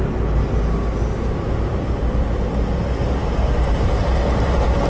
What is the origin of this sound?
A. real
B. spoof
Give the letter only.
A